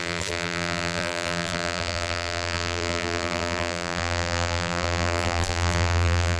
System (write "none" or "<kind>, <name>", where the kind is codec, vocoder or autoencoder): vocoder, BigVGAN v2